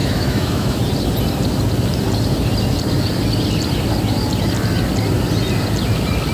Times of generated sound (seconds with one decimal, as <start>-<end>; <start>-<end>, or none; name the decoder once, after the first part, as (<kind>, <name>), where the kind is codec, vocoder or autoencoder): 0.0-0.8 (autoencoder, DAC-VAE)

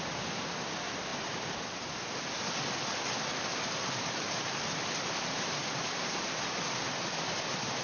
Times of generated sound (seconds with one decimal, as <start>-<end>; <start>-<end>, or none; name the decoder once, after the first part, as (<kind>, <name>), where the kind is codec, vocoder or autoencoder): none

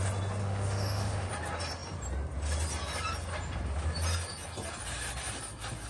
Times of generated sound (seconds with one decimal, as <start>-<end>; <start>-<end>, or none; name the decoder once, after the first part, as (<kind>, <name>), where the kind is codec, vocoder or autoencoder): 0.4-1.3 (autoencoder, DAC-VAE)

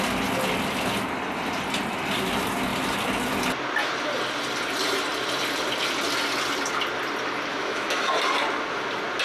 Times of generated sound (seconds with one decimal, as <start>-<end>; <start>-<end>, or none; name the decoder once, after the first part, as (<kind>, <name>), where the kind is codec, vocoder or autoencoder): 7.5-8.2 (autoencoder, DAC-VAE)

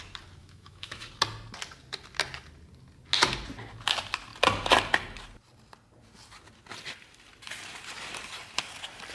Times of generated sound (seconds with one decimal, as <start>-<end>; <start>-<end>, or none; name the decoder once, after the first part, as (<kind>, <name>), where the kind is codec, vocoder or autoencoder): 0.4-1.1 (autoencoder, DAC-VAE)

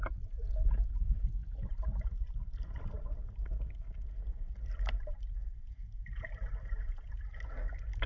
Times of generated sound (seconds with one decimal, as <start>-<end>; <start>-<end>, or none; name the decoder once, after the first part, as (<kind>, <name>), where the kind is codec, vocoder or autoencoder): none

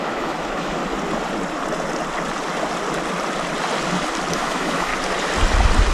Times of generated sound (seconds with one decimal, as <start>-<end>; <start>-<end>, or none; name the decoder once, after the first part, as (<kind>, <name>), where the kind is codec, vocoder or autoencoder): 0.0-0.8 (autoencoder, DAC-VAE); 4.3-4.9

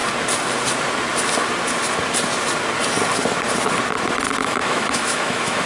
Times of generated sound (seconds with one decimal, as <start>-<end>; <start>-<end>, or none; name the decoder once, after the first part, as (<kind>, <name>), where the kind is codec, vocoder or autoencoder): 4.4-5.7 (autoencoder, DAC-VAE)